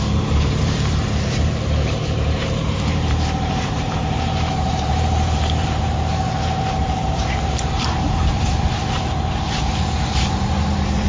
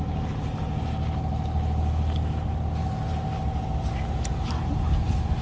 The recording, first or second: second